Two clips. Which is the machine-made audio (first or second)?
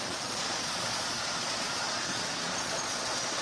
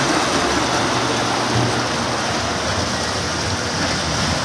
first